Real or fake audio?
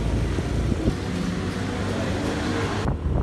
real